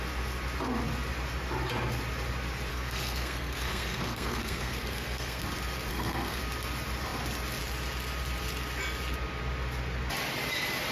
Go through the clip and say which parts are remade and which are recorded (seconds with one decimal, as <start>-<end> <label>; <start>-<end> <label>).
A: 0.0-2.7 recorded; 2.7-5.4 remade; 5.4-5.9 recorded; 5.9-6.4 remade; 6.4-10.9 recorded